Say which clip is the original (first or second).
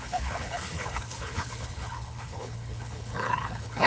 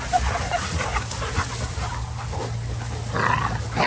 second